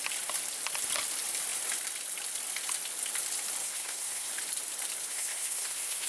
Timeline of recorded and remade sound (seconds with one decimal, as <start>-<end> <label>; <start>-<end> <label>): 0.0-3.6 recorded; 3.6-4.3 remade; 4.3-5.1 recorded; 5.1-6.1 remade